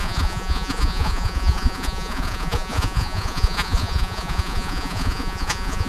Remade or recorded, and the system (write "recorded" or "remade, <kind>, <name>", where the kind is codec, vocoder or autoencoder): remade, vocoder, Vocos